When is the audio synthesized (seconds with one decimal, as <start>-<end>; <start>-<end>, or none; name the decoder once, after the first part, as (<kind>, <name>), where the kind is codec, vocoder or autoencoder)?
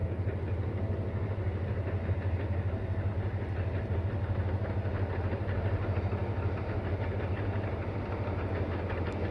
none